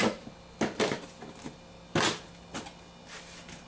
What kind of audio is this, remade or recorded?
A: recorded